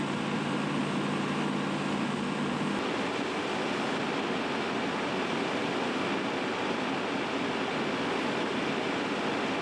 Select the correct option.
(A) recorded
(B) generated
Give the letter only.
A